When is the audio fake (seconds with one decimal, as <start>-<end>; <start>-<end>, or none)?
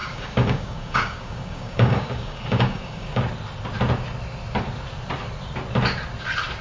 0.0-3.2